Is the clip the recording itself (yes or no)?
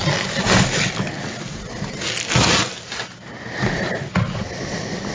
yes